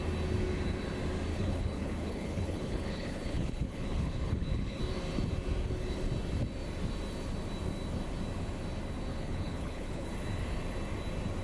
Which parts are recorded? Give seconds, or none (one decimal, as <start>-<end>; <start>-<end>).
0.0-1.3; 4.8-9.1; 10.1-11.4